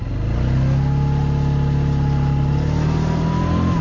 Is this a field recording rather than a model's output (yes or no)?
yes